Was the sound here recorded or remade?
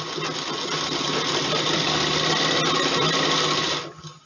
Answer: recorded